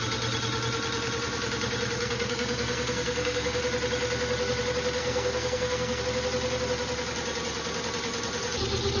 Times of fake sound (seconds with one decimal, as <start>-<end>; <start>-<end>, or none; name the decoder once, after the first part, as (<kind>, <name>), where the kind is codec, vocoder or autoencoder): 2.0-3.6 (codec, SNAC); 5.0-6.0